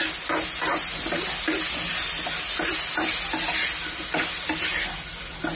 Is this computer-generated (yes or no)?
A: no